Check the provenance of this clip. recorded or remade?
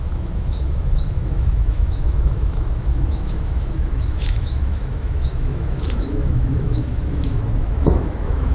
remade